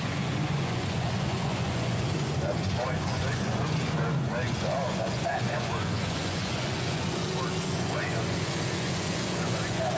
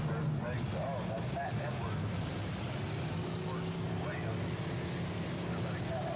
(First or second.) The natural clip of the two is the second